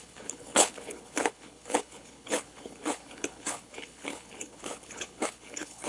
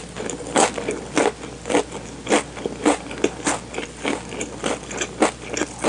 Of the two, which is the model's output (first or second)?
first